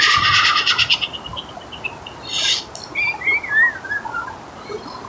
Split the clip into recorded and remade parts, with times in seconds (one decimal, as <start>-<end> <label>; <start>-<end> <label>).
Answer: 0.0-5.1 recorded